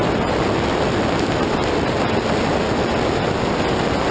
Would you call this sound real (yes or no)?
yes